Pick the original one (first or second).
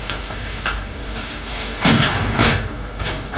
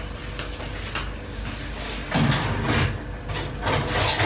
second